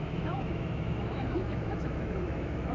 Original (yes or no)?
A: no